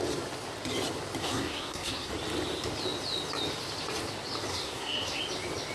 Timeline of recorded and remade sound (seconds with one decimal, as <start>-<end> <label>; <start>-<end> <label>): 0.0-1.2 recorded; 1.2-2.1 remade; 2.1-4.5 recorded; 4.5-5.2 remade; 5.2-5.7 recorded